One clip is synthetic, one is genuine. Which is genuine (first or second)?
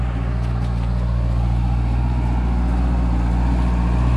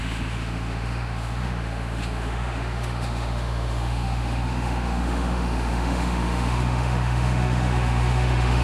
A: first